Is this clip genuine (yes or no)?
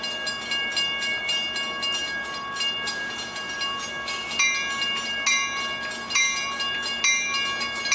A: yes